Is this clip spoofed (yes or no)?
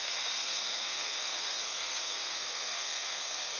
yes